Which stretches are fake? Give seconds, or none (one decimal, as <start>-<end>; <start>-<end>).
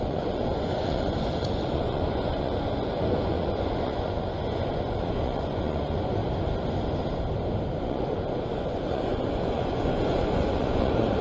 0.0-6.2; 7.8-11.2